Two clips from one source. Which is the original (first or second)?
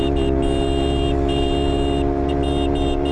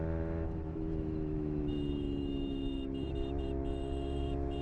first